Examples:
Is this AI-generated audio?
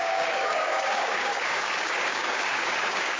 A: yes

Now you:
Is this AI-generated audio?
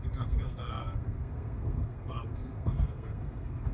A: yes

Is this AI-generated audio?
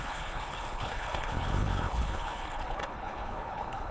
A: yes